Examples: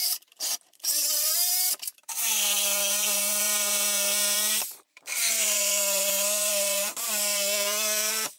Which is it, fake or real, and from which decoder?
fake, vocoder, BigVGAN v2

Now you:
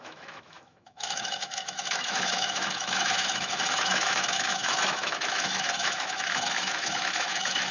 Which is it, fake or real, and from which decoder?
fake, autoencoder, DAC-VAE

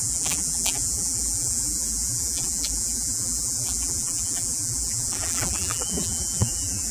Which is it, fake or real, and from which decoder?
fake, vocoder, BigVGAN v2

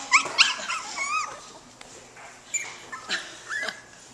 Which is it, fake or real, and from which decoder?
real